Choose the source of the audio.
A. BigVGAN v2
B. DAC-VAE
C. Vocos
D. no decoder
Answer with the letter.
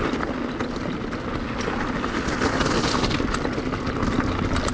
D